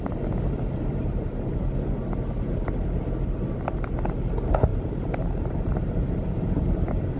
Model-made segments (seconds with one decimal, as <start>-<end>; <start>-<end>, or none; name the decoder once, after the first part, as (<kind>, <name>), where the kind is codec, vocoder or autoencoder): 4.7-7.2 (vocoder, BigVGAN v2)